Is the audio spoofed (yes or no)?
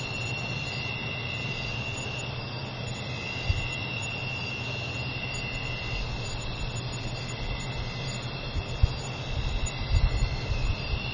no